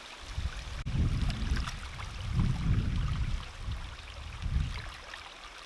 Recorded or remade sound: recorded